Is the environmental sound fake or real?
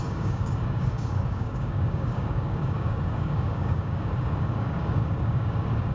fake